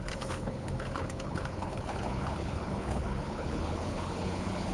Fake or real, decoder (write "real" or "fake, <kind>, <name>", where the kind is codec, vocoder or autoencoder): fake, codec, HILCodec